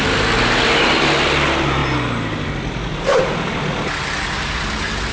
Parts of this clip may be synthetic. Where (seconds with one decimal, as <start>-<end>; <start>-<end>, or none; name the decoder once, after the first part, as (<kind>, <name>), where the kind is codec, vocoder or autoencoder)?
none